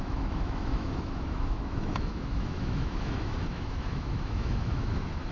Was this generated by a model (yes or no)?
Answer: yes